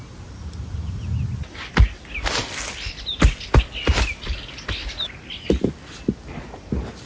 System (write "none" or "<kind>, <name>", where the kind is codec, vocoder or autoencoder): none